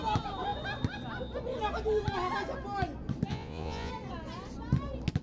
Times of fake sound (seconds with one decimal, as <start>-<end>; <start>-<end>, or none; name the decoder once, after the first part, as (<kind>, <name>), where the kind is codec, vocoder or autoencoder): 3.3-3.9 (vocoder, Vocos)